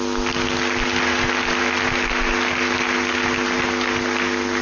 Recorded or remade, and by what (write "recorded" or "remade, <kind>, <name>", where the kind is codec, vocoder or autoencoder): recorded